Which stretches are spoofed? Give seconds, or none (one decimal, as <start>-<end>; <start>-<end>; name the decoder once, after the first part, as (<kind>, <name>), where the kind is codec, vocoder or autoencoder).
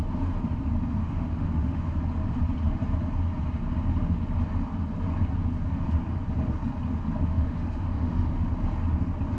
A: 1.0-1.9 (autoencoder, DAC-VAE); 7.2-8.5